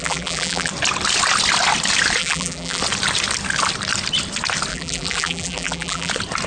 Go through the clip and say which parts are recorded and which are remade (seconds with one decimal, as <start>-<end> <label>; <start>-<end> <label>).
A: 0.0-0.7 remade; 0.7-2.2 recorded; 2.2-2.8 remade; 2.8-4.7 recorded; 4.7-6.1 remade; 6.1-6.5 recorded